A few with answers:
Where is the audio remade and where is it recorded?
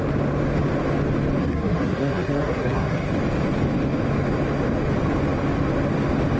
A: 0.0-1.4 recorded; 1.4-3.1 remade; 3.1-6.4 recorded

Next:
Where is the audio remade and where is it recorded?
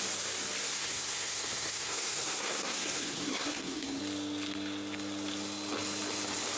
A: 0.0-0.6 recorded; 0.6-4.0 remade; 4.0-6.6 recorded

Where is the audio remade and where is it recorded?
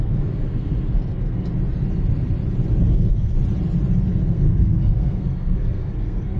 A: 0.0-1.5 remade; 1.5-2.8 recorded; 2.8-3.3 remade; 3.3-4.1 recorded; 4.1-6.4 remade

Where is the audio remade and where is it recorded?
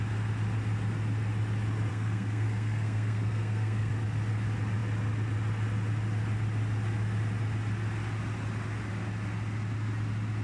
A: 0.0-1.9 recorded; 1.9-3.9 remade; 3.9-10.4 recorded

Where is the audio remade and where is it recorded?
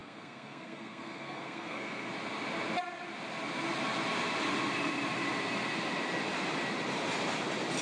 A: 0.0-2.1 remade; 2.1-7.8 recorded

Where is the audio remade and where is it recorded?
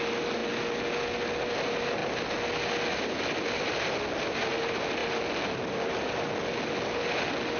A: 0.0-7.6 recorded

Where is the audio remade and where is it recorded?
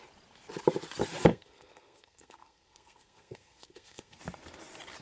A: 0.0-1.3 recorded; 1.3-4.2 remade; 4.2-5.0 recorded